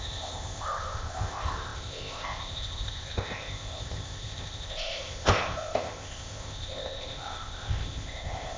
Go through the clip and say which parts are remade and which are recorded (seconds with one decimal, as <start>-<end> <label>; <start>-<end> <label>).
0.0-8.6 remade